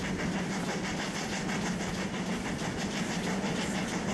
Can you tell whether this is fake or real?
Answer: real